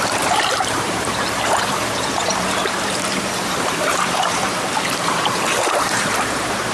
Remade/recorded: remade